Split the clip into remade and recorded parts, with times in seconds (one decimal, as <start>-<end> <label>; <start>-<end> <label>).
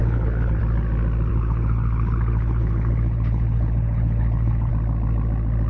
0.0-0.6 remade; 0.6-1.3 recorded; 1.3-4.7 remade; 4.7-5.7 recorded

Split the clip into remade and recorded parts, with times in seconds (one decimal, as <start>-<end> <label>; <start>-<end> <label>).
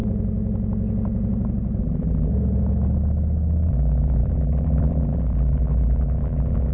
0.0-1.8 recorded; 1.8-2.3 remade; 2.3-3.7 recorded; 3.7-6.7 remade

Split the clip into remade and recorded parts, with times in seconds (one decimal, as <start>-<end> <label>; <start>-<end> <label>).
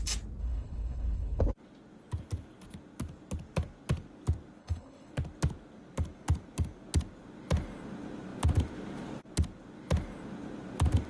0.0-0.4 recorded; 0.4-1.4 remade; 1.4-4.6 recorded; 4.6-5.1 remade; 5.1-11.1 recorded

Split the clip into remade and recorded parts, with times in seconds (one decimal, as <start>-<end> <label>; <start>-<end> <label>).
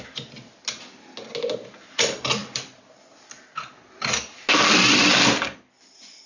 0.0-6.3 recorded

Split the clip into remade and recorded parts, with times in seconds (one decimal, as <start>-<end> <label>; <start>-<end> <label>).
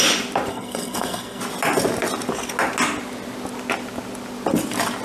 0.0-0.5 recorded; 0.5-1.4 remade; 1.4-5.0 recorded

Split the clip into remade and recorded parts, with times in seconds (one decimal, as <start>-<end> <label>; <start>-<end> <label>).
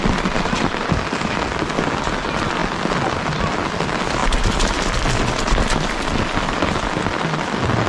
0.0-7.9 recorded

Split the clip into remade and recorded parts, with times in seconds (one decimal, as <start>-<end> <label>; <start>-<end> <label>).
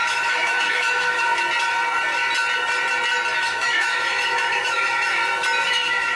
0.0-1.3 remade; 1.3-3.4 recorded; 3.4-5.2 remade; 5.2-5.7 recorded; 5.7-6.2 remade